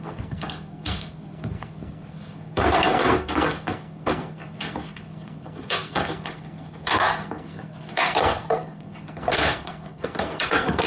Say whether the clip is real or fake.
fake